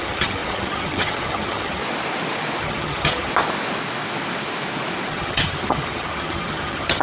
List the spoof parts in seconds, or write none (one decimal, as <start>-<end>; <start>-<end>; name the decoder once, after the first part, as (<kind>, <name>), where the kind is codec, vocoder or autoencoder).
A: 0.0-1.8 (vocoder, HiFi-GAN); 2.6-3.3; 5.1-7.0